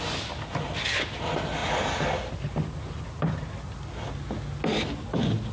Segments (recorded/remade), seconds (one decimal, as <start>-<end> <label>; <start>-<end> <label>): 0.0-5.5 recorded